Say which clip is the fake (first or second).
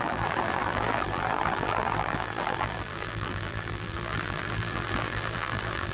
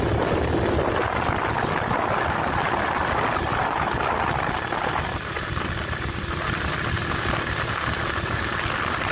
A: first